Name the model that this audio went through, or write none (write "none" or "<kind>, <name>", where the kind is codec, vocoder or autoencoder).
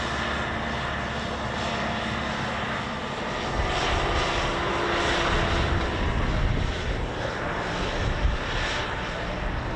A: none